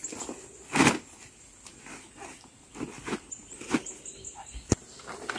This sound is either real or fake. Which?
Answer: real